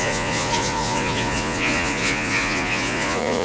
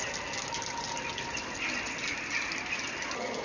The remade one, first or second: first